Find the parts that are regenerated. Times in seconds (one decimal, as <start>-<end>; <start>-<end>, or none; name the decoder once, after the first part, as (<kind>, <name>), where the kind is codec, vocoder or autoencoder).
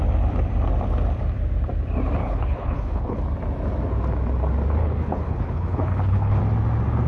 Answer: 2.2-3.2 (codec, HILCodec); 4.8-6.4